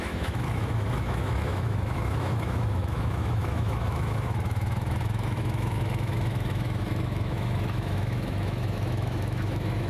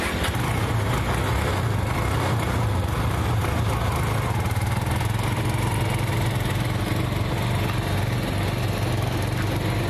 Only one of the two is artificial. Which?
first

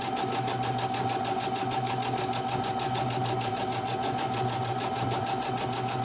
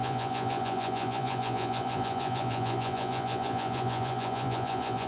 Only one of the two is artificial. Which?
second